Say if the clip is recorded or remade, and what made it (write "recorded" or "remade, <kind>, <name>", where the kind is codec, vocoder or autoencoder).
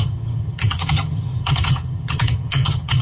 remade, vocoder, HiFi-GAN